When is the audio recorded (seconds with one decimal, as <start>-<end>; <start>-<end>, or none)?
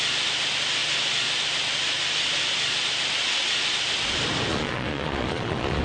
0.0-4.5